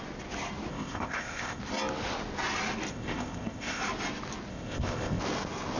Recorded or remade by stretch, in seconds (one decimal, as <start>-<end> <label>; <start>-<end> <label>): 0.0-0.7 recorded; 0.7-1.6 remade; 1.6-2.9 recorded; 2.9-3.8 remade; 3.8-4.5 recorded; 4.5-5.2 remade; 5.2-5.8 recorded